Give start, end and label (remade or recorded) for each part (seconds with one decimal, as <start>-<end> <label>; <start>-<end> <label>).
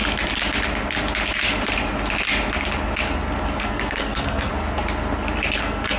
0.0-3.6 recorded; 3.6-4.5 remade; 4.5-5.6 recorded; 5.6-6.0 remade